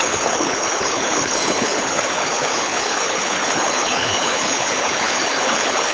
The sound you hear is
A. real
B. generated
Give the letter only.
B